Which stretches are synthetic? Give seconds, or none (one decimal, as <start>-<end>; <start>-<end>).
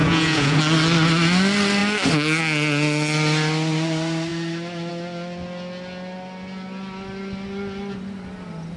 0.0-0.6